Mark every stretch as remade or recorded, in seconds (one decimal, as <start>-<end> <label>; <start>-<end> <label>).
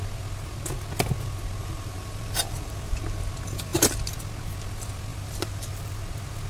0.0-1.6 recorded; 1.6-3.0 remade; 3.0-5.1 recorded; 5.1-5.8 remade; 5.8-6.5 recorded